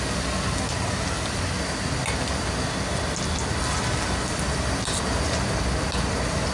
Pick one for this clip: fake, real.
real